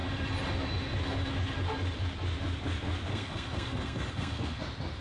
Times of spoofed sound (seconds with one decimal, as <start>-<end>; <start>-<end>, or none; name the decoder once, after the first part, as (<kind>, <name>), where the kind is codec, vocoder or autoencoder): 3.1-4.6 (codec, SNAC)